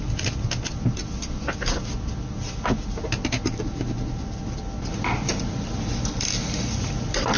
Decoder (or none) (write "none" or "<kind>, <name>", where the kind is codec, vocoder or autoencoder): none